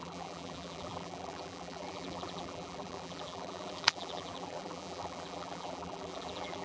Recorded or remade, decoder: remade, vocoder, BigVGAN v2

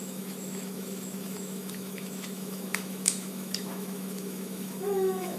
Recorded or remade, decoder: remade, autoencoder, DAC-VAE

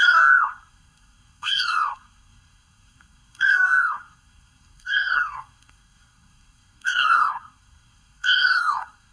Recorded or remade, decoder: remade, codec, SNAC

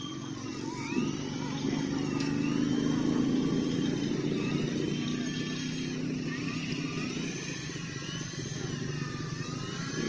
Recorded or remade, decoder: recorded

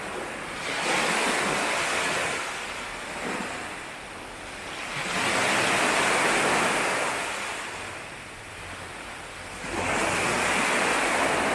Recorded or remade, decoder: recorded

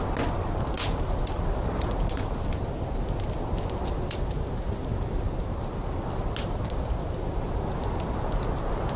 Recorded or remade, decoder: recorded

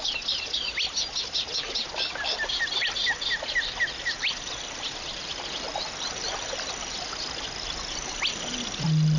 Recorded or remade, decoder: recorded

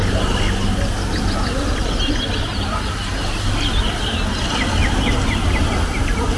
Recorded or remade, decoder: recorded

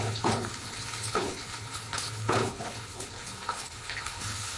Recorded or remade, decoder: remade, codec, HILCodec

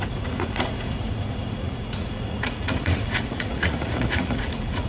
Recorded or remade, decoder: remade, vocoder, Vocos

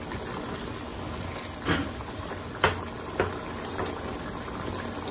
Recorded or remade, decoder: recorded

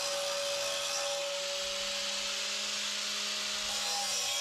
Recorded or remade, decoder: recorded